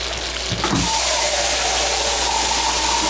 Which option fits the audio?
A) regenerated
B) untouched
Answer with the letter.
B